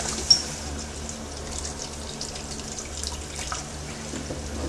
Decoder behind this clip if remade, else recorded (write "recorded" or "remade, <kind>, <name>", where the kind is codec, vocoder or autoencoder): recorded